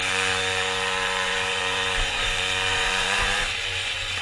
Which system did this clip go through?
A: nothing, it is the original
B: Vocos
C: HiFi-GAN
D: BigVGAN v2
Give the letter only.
B